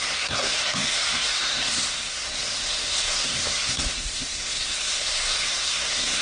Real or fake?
fake